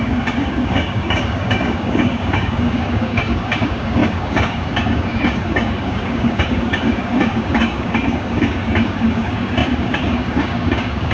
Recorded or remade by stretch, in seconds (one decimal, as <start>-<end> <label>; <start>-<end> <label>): 0.0-11.1 remade